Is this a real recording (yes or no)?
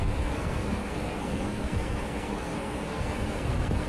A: no